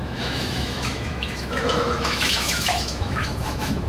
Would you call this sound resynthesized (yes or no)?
yes